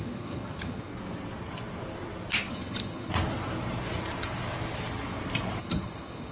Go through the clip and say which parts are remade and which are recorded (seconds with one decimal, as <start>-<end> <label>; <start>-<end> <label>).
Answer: 0.0-0.9 remade; 0.9-2.5 recorded; 2.5-3.1 remade; 3.1-5.6 recorded; 5.6-6.3 remade